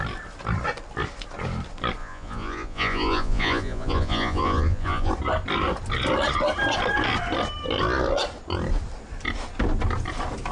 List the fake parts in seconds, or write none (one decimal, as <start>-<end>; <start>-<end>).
2.0-5.1